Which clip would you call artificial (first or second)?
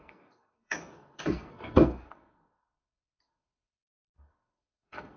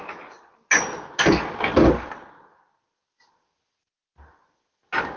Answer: first